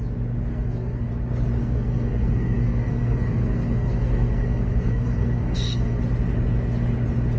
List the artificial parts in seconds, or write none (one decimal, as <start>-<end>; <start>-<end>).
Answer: 0.5-1.1; 1.6-6.0